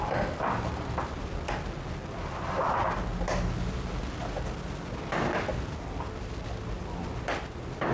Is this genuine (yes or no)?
yes